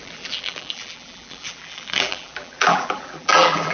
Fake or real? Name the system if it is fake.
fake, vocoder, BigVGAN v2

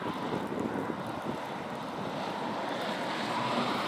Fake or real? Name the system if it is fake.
real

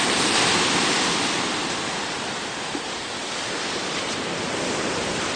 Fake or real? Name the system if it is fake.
fake, vocoder, BigVGAN v2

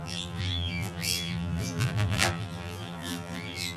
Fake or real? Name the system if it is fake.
fake, vocoder, BigVGAN v2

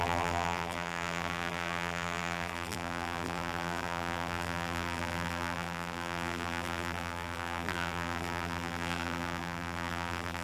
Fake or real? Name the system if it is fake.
fake, vocoder, BigVGAN v2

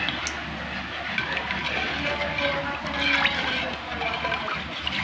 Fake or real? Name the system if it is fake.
real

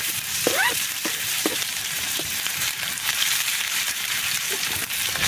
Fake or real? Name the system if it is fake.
fake, vocoder, BigVGAN v2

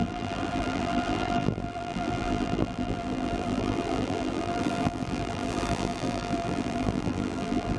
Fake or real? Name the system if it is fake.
fake, vocoder, BigVGAN v2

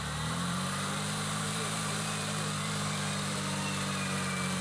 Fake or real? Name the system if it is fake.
fake, vocoder, BigVGAN v2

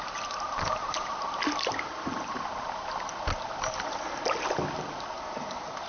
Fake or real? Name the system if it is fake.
real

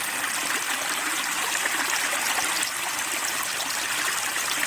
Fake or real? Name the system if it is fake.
real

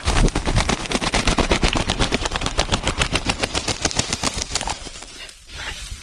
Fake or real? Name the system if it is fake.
fake, vocoder, BigVGAN v2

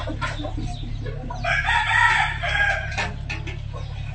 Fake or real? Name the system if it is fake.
real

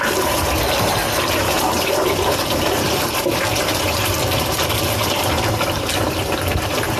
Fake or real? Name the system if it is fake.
fake, vocoder, BigVGAN v2